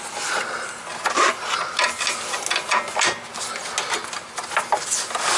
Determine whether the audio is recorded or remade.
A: recorded